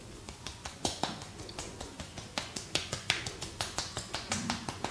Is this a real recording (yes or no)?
no